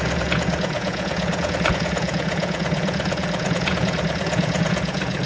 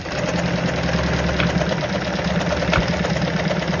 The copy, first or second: first